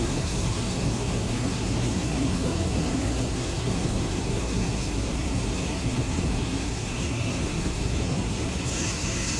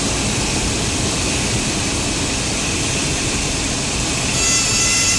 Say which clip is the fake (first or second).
first